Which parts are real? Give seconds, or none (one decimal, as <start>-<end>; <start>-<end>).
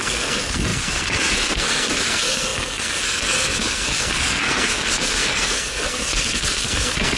none